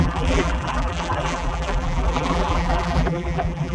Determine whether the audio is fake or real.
fake